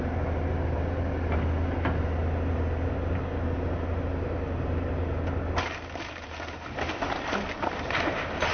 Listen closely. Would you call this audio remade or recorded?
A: recorded